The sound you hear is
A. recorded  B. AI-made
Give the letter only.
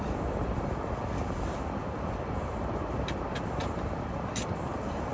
A